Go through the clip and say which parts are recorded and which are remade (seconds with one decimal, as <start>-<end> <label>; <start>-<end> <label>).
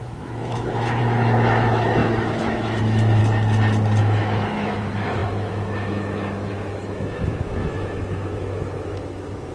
0.0-3.2 remade; 3.2-4.0 recorded; 4.0-9.5 remade